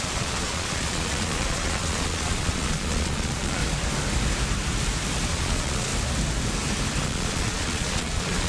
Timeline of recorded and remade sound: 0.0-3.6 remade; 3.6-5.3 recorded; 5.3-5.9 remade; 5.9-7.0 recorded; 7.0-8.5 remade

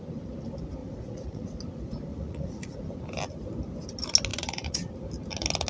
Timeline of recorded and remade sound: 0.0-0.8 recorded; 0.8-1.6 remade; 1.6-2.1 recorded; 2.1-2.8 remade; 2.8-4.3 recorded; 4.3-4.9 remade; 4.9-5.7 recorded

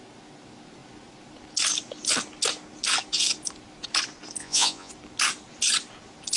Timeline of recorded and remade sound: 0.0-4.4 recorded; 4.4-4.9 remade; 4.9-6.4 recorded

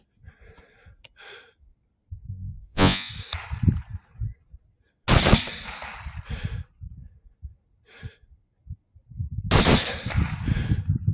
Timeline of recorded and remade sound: 0.0-2.3 recorded; 2.3-3.1 remade; 3.1-11.1 recorded

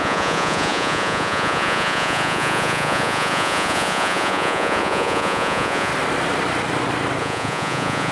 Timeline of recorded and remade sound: 0.0-5.9 remade; 5.9-7.2 recorded; 7.2-8.1 remade

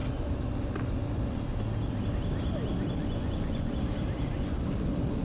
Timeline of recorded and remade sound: 0.0-3.0 recorded; 3.0-3.7 remade; 3.7-5.2 recorded